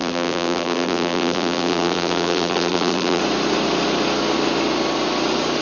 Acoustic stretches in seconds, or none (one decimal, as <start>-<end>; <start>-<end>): 3.2-5.6